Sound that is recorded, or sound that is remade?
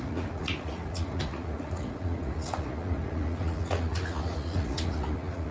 remade